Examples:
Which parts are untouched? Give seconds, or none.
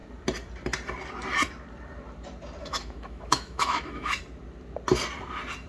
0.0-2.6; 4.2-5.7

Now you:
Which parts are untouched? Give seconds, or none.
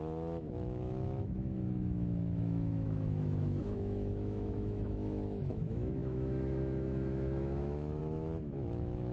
none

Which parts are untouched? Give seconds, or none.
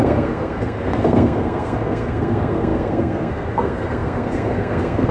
none